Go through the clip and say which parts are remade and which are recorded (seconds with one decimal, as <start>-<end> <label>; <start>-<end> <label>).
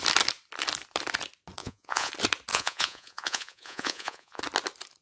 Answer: 0.0-1.6 recorded; 1.6-2.1 remade; 2.1-2.5 recorded; 2.5-4.4 remade; 4.4-5.0 recorded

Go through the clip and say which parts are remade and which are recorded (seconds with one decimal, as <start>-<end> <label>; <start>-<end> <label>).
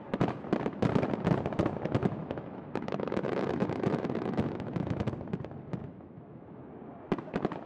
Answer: 0.0-2.0 recorded; 2.0-5.1 remade; 5.1-5.8 recorded; 5.8-6.6 remade; 6.6-7.7 recorded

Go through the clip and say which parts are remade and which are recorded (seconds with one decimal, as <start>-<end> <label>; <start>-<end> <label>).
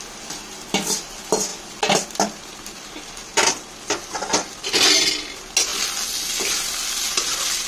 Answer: 0.0-7.7 recorded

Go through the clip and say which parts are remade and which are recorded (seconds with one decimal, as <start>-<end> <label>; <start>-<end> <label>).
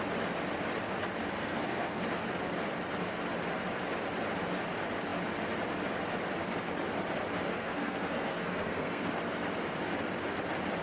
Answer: 0.0-1.4 recorded; 1.4-2.0 remade; 2.0-7.5 recorded; 7.5-9.1 remade; 9.1-10.8 recorded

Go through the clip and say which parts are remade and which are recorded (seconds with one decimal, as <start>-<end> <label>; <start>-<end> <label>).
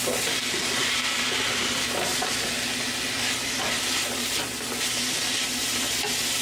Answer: 0.0-2.1 recorded; 2.1-2.7 remade; 2.7-6.4 recorded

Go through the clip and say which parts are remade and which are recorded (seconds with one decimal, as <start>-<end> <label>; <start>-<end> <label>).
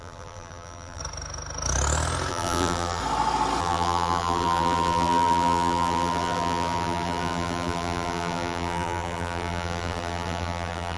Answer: 0.0-1.0 remade; 1.0-2.3 recorded; 2.3-3.0 remade; 3.0-3.6 recorded; 3.6-11.0 remade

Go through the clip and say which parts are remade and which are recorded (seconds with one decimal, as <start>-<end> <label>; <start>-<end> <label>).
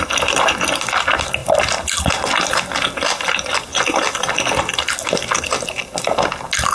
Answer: 0.0-6.7 recorded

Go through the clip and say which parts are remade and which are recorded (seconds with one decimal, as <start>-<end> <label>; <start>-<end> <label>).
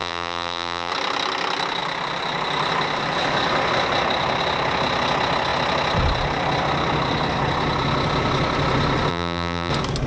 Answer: 0.0-0.9 remade; 0.9-9.1 recorded; 9.1-9.7 remade; 9.7-10.1 recorded